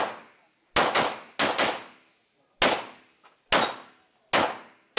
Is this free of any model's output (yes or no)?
yes